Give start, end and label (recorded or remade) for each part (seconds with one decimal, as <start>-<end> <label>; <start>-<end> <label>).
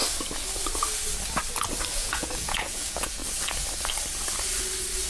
0.0-1.9 recorded; 1.9-3.2 remade; 3.2-5.1 recorded